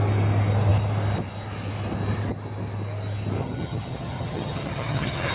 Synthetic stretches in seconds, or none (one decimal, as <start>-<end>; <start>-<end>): 3.4-5.3